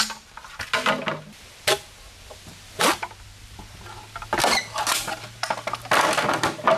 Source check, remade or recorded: recorded